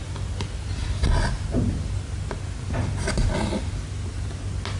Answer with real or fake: real